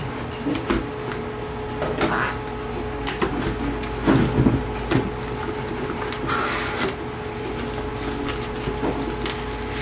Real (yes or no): yes